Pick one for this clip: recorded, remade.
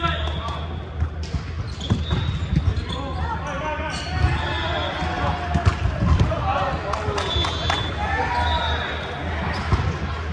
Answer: recorded